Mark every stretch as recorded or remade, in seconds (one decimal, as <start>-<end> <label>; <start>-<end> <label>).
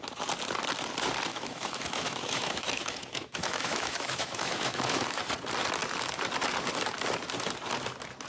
0.0-1.3 recorded; 1.3-5.2 remade; 5.2-8.3 recorded